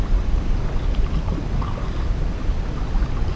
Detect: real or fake real